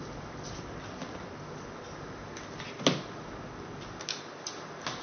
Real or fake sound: real